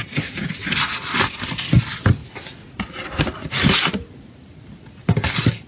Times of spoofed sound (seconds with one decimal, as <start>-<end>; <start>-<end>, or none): none